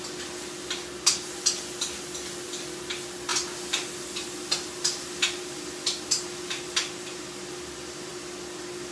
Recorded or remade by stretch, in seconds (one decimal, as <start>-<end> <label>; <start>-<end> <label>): 0.0-8.9 recorded